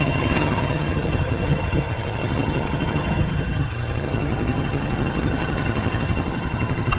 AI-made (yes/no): yes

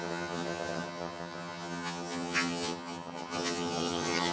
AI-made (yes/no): yes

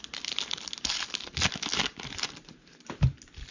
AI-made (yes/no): no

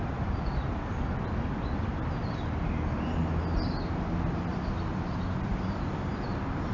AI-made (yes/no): no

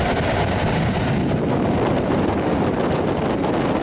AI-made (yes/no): no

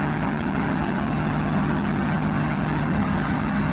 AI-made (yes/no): yes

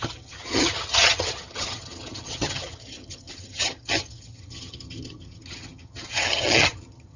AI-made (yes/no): yes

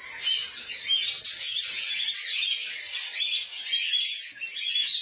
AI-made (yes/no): no